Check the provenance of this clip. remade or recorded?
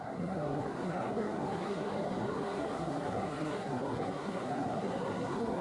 remade